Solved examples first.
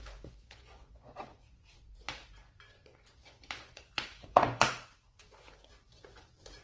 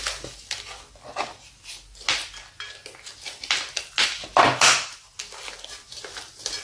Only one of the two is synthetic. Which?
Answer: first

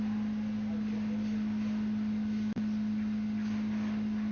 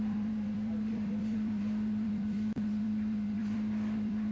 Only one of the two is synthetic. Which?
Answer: second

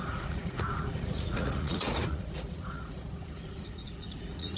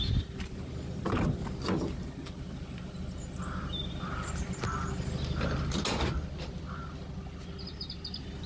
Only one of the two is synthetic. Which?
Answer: first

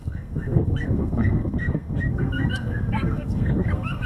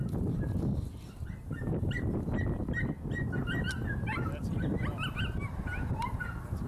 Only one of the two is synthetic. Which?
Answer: first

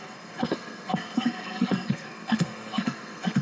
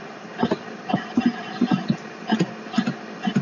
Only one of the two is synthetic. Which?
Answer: first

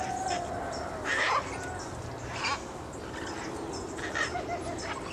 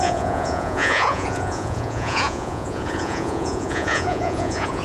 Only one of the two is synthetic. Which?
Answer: second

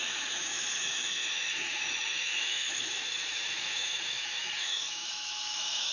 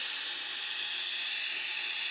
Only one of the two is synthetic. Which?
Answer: first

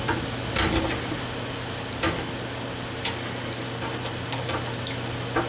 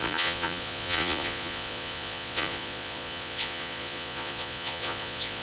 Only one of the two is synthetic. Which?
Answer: second